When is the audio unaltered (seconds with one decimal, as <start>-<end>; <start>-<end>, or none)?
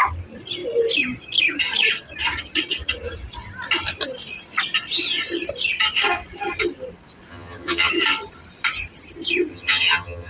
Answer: 0.0-7.3; 7.9-9.5